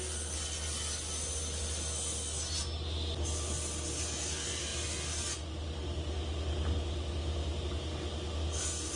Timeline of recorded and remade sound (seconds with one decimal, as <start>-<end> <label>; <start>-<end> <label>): 0.0-9.0 recorded